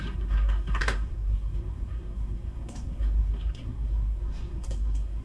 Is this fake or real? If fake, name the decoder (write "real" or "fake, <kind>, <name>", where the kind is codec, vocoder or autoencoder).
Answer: fake, codec, SNAC